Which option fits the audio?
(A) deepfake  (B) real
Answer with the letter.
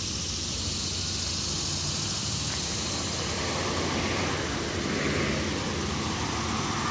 B